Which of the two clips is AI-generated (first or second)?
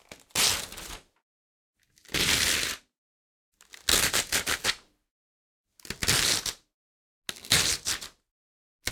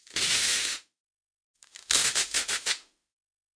second